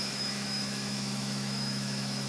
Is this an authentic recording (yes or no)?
no